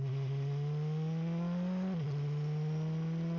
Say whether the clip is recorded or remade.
recorded